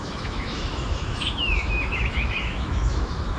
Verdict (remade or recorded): remade